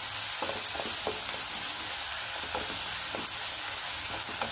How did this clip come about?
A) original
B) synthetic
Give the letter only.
A